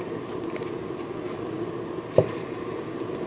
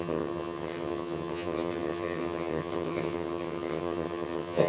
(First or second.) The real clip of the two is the first